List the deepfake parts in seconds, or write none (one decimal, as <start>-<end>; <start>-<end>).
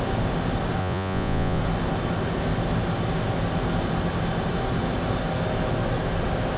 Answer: 0.8-1.6